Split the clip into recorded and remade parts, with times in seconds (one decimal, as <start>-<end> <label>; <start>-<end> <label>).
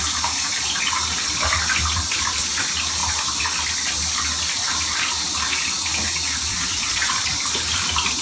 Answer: 0.0-6.5 recorded; 6.5-7.2 remade; 7.2-8.2 recorded